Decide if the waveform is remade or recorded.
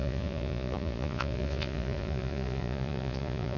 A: remade